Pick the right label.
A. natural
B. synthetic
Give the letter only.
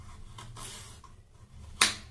A